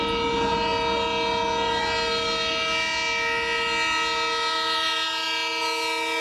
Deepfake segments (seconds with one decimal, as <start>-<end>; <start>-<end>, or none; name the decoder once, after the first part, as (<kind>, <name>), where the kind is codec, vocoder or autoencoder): none

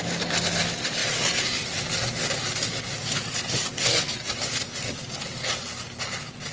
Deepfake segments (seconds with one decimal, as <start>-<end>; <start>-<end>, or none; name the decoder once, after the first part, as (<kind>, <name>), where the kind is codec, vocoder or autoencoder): none

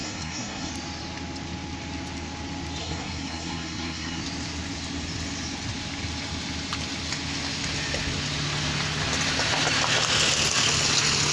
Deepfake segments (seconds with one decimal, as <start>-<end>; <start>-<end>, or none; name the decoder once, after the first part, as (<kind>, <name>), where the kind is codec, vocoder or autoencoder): 0.0-0.7 (codec, SNAC); 2.8-4.2